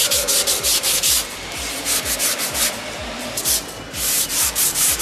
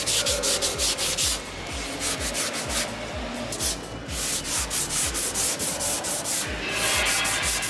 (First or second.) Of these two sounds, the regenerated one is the first